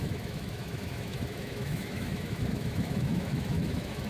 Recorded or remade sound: remade